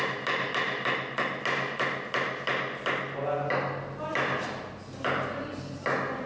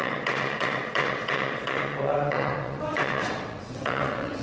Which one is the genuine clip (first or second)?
first